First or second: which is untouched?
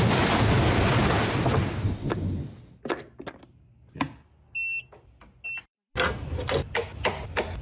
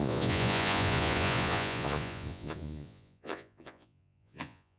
first